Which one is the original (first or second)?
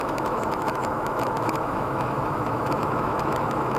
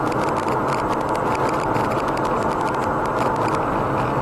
second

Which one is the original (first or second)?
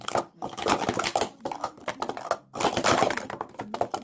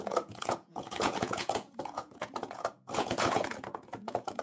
first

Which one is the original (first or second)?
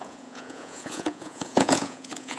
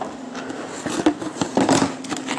second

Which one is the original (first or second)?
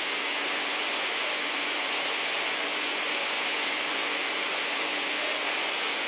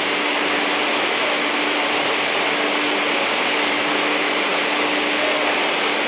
second